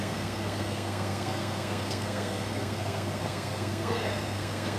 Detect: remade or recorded remade